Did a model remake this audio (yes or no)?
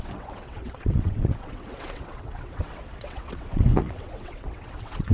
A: yes